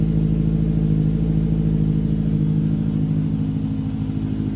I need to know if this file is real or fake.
real